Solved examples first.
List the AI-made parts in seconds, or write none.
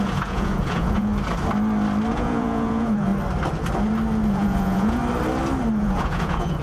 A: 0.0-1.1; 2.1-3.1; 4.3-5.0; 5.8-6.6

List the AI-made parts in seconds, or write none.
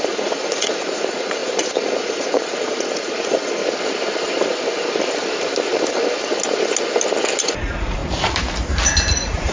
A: 0.0-3.6; 7.4-8.0; 9.1-9.5